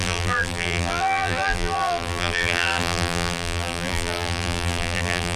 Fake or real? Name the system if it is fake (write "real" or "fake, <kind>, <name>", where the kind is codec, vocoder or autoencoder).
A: fake, vocoder, BigVGAN v2